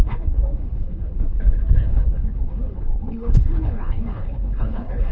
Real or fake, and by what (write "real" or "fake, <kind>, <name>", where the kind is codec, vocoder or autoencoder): fake, codec, HILCodec